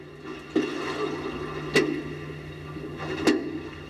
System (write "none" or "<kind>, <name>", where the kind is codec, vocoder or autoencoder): none